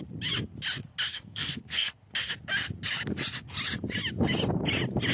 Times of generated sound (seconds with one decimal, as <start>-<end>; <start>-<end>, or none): 1.1-2.0